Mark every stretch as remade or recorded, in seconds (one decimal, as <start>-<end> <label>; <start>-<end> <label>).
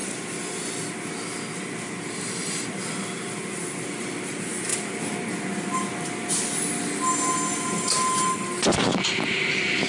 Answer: 0.0-9.9 recorded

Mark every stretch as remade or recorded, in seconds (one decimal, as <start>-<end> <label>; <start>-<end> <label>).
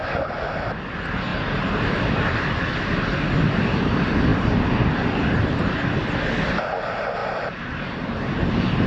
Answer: 0.0-1.3 recorded; 1.3-2.0 remade; 2.0-7.2 recorded; 7.2-8.4 remade; 8.4-8.9 recorded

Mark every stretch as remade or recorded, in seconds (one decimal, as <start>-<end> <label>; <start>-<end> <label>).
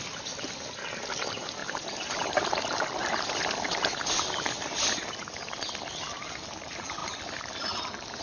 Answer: 0.0-1.6 recorded; 1.6-2.6 remade; 2.6-8.2 recorded